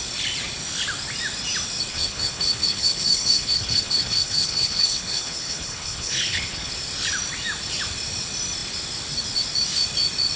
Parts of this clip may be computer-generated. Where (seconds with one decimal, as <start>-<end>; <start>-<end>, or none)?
1.9-6.7